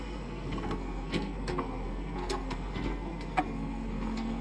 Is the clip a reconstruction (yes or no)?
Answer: yes